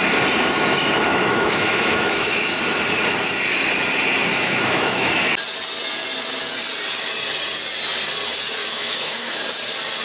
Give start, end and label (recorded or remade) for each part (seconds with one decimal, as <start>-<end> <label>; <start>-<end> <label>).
0.0-1.1 recorded; 1.1-2.6 remade; 2.6-4.3 recorded; 4.3-5.1 remade; 5.1-8.6 recorded; 8.6-9.4 remade; 9.4-10.0 recorded